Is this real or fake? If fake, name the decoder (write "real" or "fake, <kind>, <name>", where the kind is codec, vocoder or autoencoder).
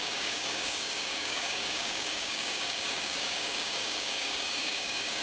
fake, codec, DAC